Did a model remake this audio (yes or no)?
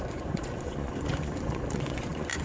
yes